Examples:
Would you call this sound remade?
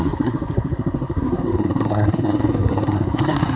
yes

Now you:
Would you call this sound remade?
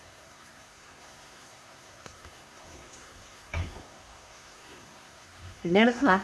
yes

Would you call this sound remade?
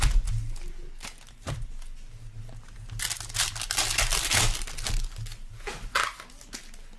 no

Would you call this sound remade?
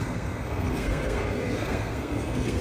yes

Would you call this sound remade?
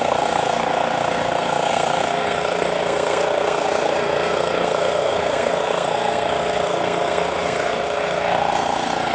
yes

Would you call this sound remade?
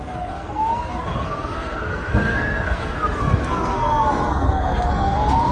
yes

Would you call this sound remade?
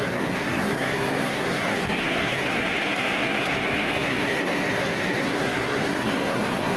yes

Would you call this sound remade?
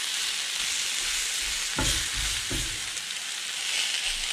no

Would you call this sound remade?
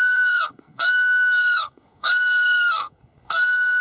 yes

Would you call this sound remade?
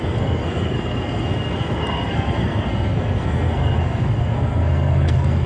yes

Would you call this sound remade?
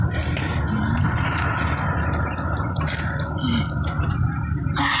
no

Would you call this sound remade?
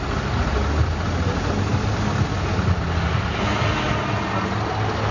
no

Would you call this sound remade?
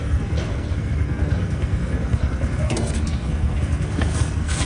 yes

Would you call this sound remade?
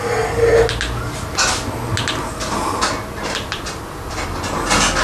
no